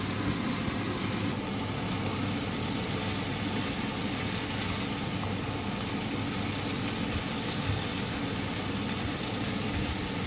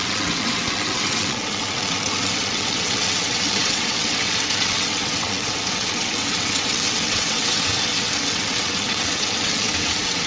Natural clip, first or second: first